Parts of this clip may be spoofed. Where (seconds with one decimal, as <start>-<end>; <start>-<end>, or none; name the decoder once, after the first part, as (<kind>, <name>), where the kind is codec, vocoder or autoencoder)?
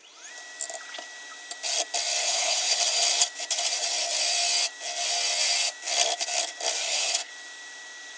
2.2-2.8 (codec, HILCodec); 6.8-7.3